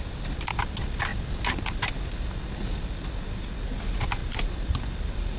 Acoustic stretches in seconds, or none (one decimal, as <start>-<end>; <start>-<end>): 0.0-5.4